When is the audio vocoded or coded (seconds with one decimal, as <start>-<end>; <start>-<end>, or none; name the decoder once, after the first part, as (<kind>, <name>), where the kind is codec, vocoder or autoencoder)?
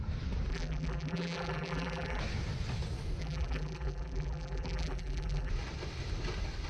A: 0.5-2.2 (vocoder, BigVGAN v2); 3.2-5.5